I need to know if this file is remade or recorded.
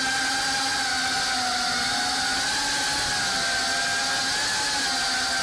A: recorded